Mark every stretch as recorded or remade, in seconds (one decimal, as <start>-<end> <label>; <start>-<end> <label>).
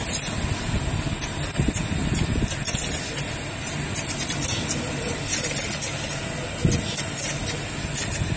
0.0-2.0 recorded; 2.0-5.1 remade; 5.1-8.4 recorded